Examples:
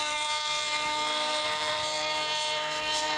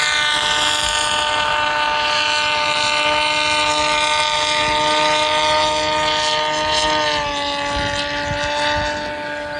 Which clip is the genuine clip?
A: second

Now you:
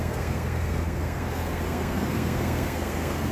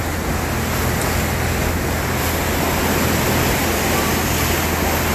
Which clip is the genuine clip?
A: second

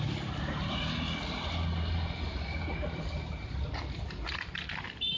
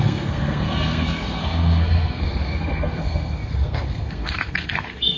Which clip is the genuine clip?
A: first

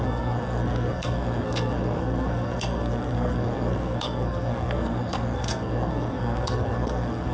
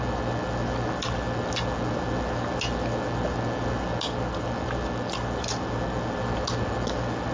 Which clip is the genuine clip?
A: second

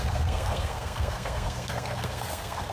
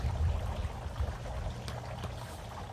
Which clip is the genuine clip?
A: second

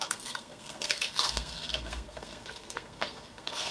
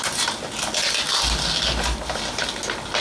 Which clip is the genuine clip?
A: second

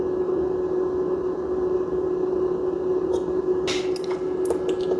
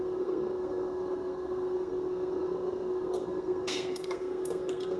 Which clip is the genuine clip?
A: first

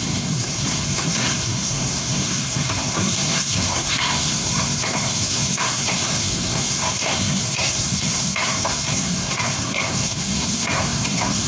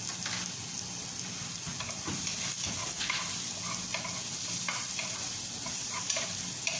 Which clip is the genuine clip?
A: second